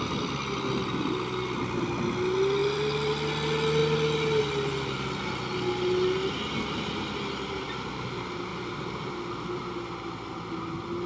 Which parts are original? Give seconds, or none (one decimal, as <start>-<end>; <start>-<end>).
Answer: 0.0-2.6; 3.3-8.5; 9.1-11.1